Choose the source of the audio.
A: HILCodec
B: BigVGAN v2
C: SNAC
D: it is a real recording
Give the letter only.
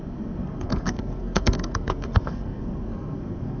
C